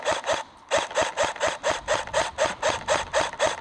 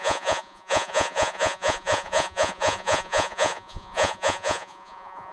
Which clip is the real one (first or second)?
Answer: first